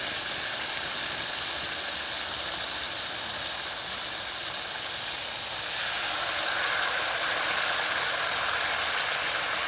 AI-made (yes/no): no